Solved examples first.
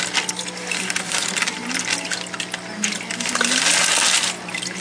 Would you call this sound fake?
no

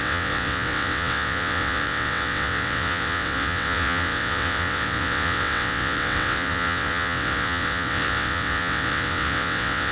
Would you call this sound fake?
yes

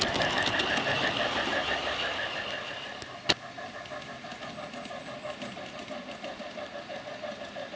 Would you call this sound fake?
no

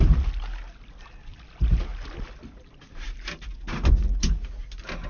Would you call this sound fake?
no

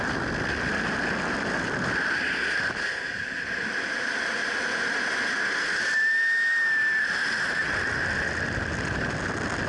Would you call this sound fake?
no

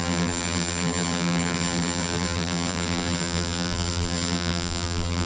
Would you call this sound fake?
yes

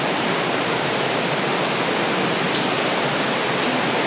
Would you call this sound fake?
no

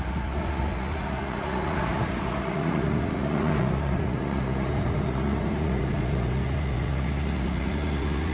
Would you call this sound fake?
yes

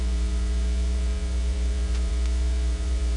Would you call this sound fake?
yes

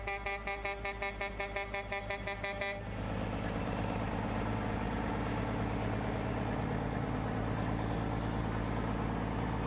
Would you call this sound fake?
no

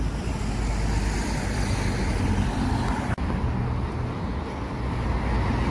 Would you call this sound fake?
no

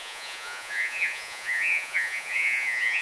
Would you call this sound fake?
yes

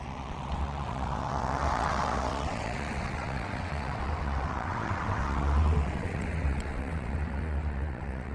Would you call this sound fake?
yes